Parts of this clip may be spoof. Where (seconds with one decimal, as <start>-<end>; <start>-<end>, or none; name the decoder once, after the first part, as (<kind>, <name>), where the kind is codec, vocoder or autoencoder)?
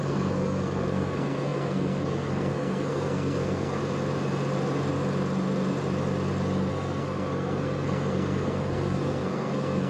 0.0-3.8 (codec, SNAC); 6.7-9.9